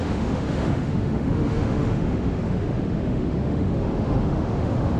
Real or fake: fake